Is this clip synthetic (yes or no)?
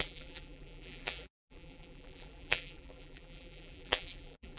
yes